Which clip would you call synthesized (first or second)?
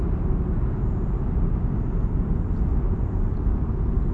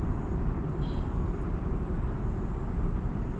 second